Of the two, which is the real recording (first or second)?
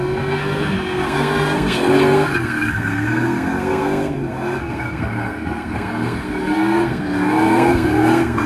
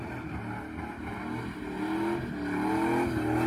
second